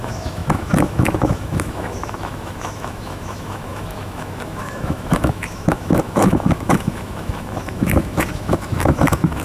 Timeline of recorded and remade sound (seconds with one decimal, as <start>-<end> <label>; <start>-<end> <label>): 0.0-9.4 remade